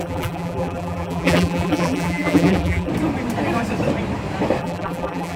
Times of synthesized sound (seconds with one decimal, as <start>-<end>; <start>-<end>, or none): 0.0-2.9; 4.6-5.4